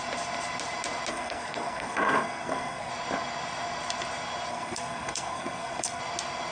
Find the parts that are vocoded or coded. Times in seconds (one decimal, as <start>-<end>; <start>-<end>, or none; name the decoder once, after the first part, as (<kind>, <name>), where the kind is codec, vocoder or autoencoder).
1.1-2.9 (codec, SNAC); 4.5-6.0